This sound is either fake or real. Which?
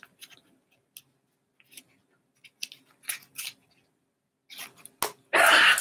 real